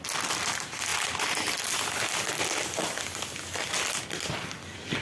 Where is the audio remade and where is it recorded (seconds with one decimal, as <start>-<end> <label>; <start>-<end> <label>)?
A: 0.0-5.0 recorded